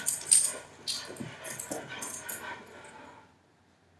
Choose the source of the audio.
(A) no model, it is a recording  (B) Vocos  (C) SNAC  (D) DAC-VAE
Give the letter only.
A